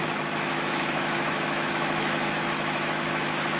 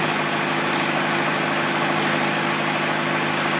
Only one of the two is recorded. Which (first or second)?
second